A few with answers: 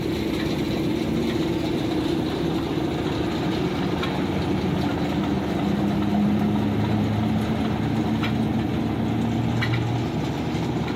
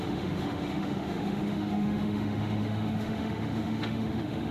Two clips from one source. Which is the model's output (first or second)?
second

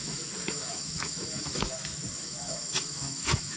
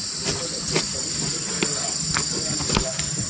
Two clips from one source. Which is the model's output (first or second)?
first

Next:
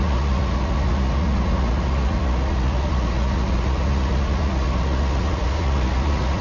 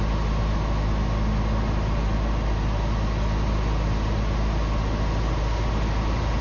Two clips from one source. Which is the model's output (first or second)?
first